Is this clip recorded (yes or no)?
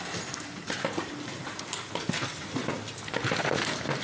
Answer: yes